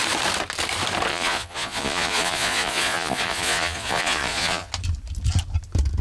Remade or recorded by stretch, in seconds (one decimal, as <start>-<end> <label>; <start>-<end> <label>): 0.0-1.1 recorded; 1.1-4.7 remade; 4.7-6.0 recorded